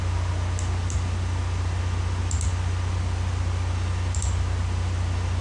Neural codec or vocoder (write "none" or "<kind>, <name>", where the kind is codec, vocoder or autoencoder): none